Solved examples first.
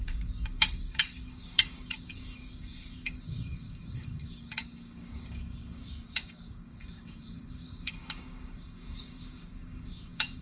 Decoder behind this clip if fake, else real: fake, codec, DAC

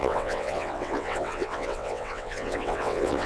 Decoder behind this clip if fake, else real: fake, vocoder, WaveNeXt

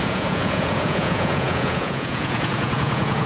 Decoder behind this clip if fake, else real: fake, vocoder, Vocos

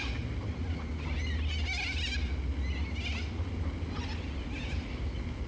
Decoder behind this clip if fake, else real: real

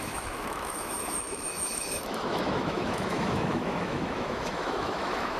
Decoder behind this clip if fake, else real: fake, autoencoder, DAC-VAE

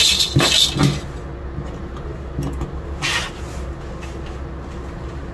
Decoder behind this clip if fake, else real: real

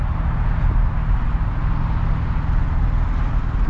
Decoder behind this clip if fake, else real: real